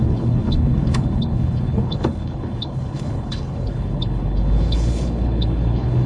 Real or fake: fake